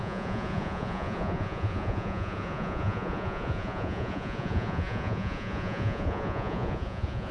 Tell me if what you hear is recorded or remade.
remade